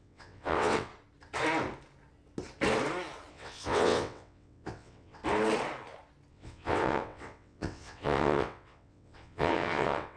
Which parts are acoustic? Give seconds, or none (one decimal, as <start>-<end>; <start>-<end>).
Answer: 0.9-3.3; 5.2-6.3